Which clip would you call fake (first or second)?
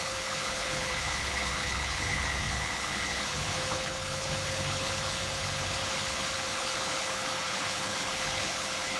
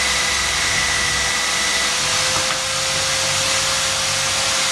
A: first